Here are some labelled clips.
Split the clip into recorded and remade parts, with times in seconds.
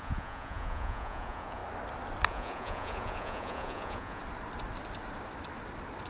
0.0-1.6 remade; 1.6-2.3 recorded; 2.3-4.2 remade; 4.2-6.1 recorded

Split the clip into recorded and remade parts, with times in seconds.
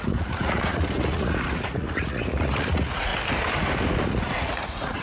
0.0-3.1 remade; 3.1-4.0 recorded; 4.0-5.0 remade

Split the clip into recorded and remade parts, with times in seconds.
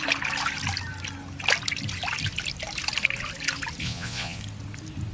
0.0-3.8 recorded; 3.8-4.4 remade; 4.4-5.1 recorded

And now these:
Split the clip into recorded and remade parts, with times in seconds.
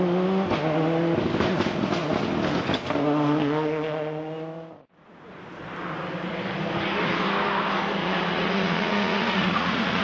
0.0-8.0 recorded; 8.0-10.0 remade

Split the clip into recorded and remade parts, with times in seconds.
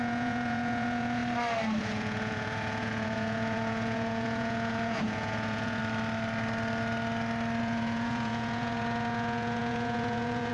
0.0-1.2 remade; 1.2-1.8 recorded; 1.8-5.8 remade; 5.8-7.6 recorded; 7.6-10.5 remade